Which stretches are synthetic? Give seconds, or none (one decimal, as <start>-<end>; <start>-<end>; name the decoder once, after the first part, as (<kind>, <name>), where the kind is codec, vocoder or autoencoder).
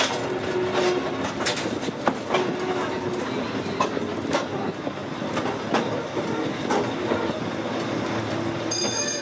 none